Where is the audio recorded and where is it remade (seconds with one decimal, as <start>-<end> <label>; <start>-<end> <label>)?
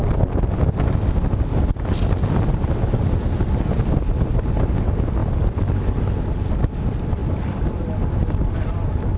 0.0-5.2 recorded; 5.2-6.6 remade; 6.6-7.2 recorded; 7.2-7.8 remade; 7.8-8.2 recorded; 8.2-9.2 remade